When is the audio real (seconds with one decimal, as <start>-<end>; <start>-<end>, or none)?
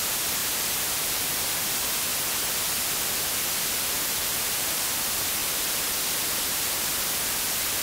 0.0-0.4; 1.4-5.4; 5.9-7.8